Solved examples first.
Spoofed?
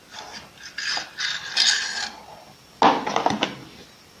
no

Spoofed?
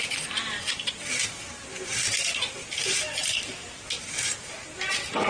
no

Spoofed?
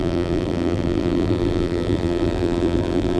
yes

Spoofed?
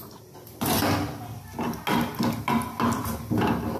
no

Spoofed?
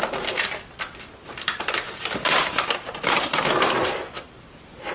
yes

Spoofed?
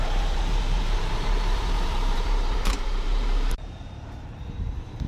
yes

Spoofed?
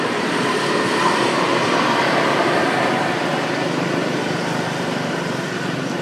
yes